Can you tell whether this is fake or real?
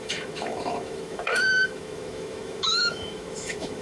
fake